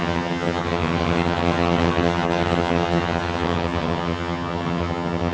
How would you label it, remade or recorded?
remade